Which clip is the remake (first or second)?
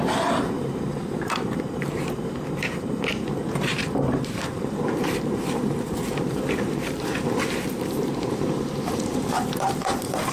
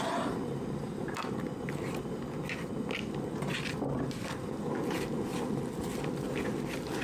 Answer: first